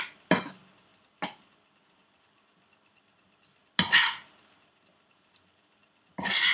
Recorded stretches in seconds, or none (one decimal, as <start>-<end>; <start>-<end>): 0.0-6.5